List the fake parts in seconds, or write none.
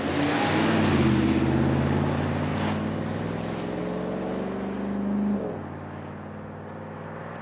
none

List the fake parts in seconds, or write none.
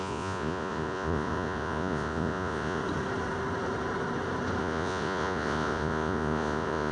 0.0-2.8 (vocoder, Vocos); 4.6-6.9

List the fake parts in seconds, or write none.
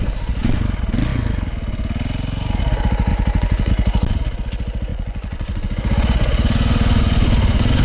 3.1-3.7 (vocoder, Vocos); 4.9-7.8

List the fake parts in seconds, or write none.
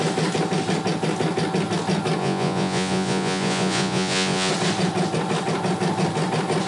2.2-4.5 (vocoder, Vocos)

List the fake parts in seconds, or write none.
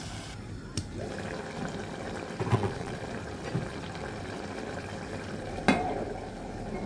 2.5-3.0 (vocoder, Vocos)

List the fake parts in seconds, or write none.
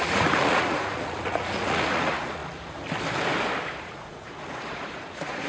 0.0-2.4 (vocoder, Vocos); 3.8-5.5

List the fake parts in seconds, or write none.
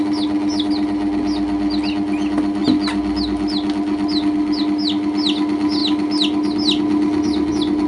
none